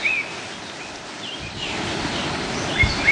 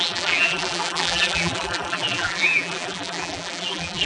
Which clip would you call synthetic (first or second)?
second